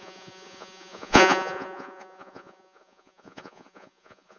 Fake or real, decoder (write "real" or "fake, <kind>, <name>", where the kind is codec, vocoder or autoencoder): fake, vocoder, Vocos